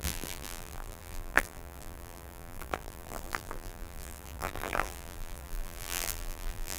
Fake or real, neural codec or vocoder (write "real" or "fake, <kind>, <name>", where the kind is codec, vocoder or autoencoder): fake, vocoder, BigVGAN v2